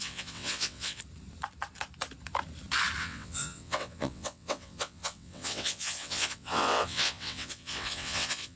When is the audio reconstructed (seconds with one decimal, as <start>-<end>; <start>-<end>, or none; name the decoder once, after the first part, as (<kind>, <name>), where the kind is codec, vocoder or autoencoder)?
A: 0.0-1.0 (vocoder, WaveNeXt); 3.0-8.6